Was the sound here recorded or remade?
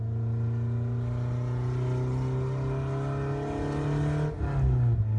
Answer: recorded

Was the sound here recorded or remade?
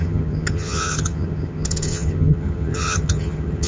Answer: remade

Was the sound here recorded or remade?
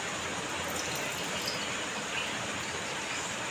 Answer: recorded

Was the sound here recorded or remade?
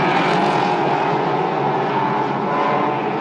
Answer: remade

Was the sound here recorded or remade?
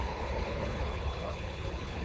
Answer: remade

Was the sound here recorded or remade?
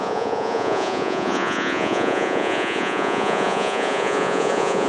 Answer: remade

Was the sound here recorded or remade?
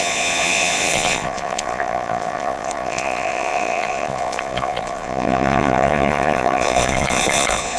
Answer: remade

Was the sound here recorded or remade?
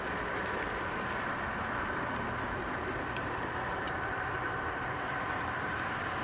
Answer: remade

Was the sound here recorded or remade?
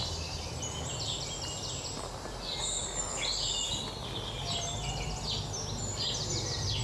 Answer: recorded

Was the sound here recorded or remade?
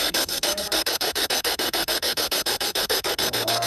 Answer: remade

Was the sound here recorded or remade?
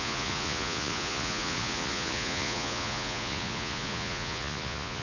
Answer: remade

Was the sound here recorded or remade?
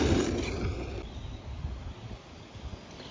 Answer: recorded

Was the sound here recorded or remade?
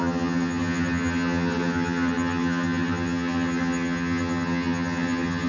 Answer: remade